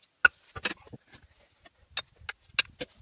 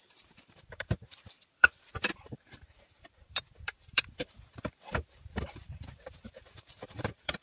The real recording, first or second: first